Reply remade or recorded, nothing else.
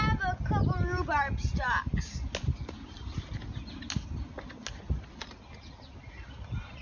recorded